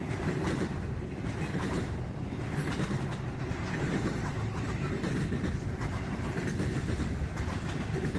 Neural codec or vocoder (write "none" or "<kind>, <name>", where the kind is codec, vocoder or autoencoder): vocoder, BigVGAN v2